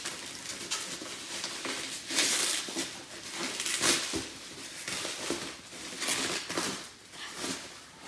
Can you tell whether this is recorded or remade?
recorded